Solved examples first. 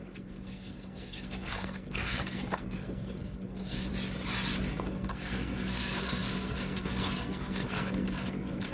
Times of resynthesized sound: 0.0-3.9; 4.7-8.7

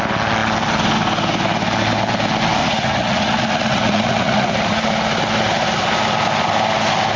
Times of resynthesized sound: 2.6-4.8

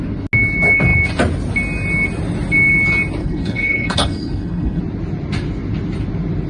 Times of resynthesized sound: 3.2-4.8